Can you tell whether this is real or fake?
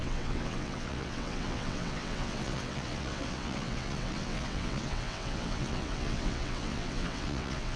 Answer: fake